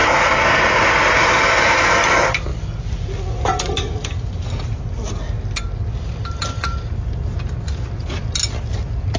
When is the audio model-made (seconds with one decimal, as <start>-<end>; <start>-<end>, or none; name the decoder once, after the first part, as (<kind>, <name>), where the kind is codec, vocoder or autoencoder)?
none